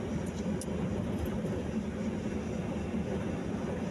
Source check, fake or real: real